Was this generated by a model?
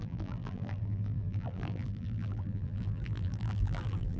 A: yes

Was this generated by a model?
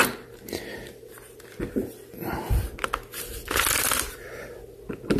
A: no